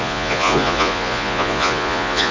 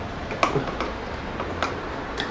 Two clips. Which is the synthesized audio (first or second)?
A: first